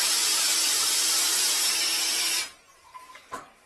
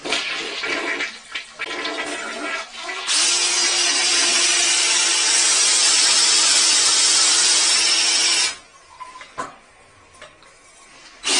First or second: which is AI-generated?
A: first